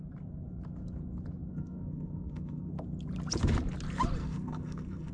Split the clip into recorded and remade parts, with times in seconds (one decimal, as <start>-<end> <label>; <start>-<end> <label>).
0.0-1.5 recorded; 1.5-2.7 remade; 2.7-4.2 recorded; 4.2-5.1 remade